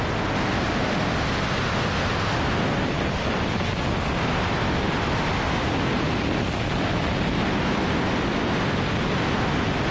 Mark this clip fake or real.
real